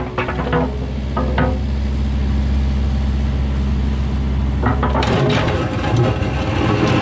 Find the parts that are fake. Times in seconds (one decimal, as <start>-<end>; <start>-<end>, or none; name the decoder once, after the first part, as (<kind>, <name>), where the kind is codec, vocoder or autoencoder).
4.7-6.0 (vocoder, BigVGAN v2)